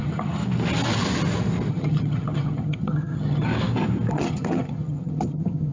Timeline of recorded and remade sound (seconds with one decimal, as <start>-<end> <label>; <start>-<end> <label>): 0.0-0.4 remade; 0.4-1.7 recorded; 1.7-3.5 remade; 3.5-4.1 recorded; 4.1-5.7 remade